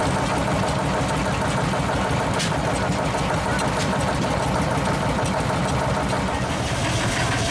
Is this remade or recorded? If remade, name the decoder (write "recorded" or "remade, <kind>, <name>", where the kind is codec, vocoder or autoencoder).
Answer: recorded